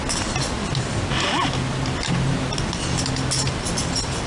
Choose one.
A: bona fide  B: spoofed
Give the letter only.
A